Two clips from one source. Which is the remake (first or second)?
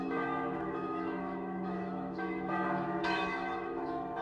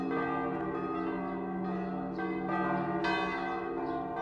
first